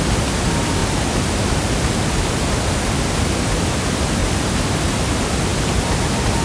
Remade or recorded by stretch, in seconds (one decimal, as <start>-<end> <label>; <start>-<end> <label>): 0.0-6.4 recorded